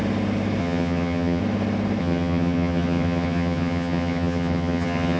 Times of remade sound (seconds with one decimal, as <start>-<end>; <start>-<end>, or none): 0.6-1.4; 2.0-5.2